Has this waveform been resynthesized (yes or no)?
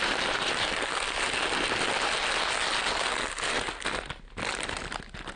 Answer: no